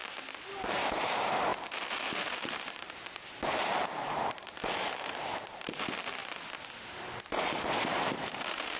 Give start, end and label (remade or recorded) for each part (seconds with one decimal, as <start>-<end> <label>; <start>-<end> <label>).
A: 0.0-0.5 recorded; 0.5-6.2 remade; 6.2-7.2 recorded; 7.2-8.8 remade